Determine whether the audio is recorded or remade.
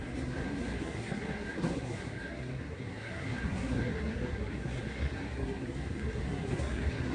remade